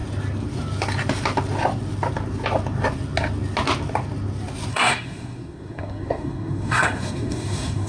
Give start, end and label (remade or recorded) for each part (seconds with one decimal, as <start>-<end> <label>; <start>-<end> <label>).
0.0-4.7 recorded; 4.7-7.9 remade